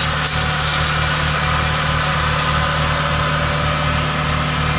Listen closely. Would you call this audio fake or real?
real